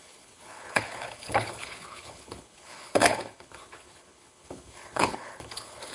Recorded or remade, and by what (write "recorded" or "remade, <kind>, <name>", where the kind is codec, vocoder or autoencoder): remade, codec, HILCodec